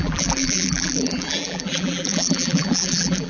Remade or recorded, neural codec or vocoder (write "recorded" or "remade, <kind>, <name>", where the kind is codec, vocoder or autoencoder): remade, vocoder, BigVGAN v2